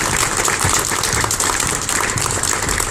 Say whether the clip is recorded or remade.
remade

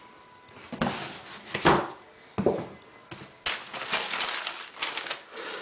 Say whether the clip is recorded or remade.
recorded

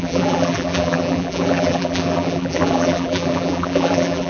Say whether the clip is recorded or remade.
remade